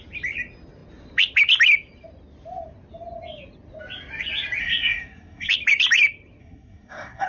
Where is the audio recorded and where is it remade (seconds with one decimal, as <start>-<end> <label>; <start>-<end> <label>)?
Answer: 0.0-4.6 recorded; 4.6-5.5 remade; 5.5-6.4 recorded; 6.4-7.3 remade